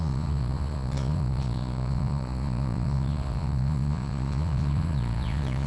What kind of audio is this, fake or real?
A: fake